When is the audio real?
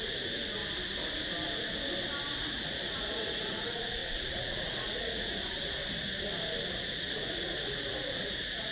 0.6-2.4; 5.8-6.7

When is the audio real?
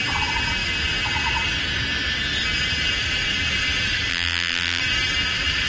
0.0-4.1; 4.8-5.7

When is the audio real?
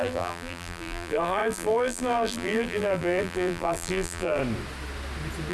4.4-5.5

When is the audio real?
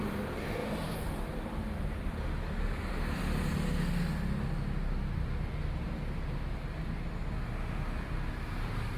0.0-0.6; 1.2-1.6; 2.9-9.0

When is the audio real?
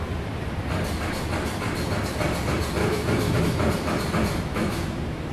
0.0-2.8; 3.4-4.5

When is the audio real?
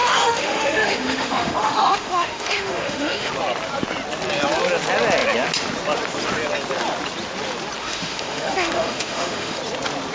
3.3-7.8; 9.6-10.1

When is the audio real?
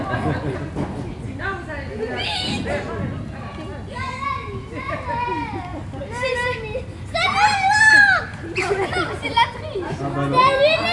0.0-10.9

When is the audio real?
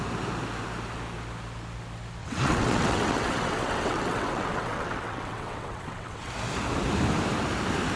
0.0-2.2; 6.3-8.0